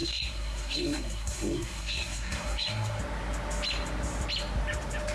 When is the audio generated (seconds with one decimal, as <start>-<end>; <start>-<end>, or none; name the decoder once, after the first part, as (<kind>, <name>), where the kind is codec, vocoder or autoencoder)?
0.0-3.0 (codec, SNAC)